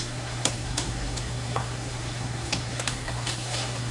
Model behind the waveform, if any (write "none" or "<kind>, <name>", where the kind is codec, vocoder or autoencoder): codec, SNAC